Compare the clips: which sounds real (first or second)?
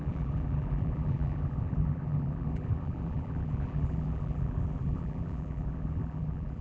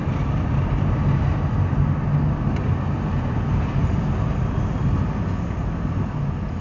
second